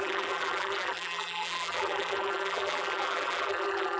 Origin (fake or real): fake